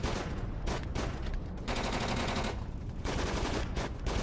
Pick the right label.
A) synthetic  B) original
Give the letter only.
A